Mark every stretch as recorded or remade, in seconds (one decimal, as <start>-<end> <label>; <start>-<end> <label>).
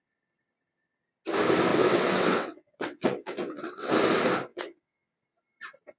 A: 0.0-1.7 recorded; 1.7-3.9 remade; 3.9-4.5 recorded; 4.5-5.1 remade; 5.1-6.0 recorded